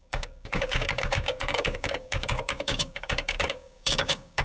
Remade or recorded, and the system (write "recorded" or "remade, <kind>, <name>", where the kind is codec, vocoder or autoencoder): remade, codec, DAC